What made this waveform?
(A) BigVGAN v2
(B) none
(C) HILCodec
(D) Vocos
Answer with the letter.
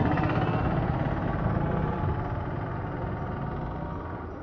B